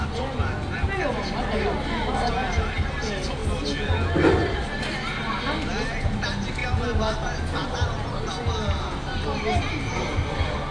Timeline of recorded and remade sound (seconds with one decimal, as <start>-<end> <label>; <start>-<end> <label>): 0.0-10.7 recorded